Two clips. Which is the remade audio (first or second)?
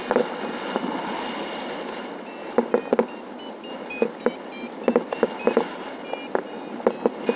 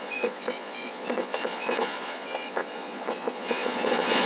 second